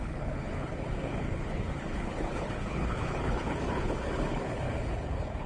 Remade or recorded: remade